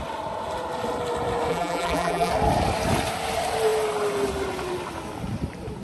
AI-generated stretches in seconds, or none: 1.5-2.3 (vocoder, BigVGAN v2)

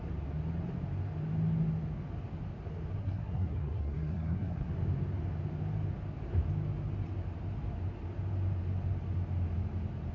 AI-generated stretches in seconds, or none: 3.0-4.7 (codec, SNAC)

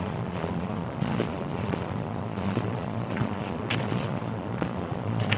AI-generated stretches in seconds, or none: 0.0-5.4 (vocoder, Vocos)